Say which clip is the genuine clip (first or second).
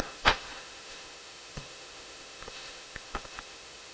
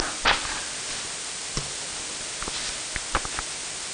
second